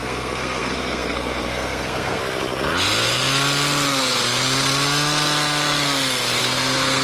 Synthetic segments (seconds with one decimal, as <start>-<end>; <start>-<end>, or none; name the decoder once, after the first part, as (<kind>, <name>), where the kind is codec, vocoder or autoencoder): 0.0-2.2 (codec, SNAC); 6.4-7.0